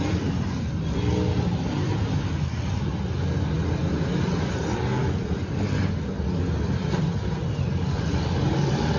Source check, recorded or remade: recorded